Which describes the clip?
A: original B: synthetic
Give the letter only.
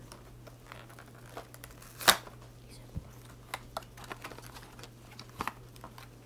A